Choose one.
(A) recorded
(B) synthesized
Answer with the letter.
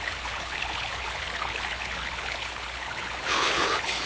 B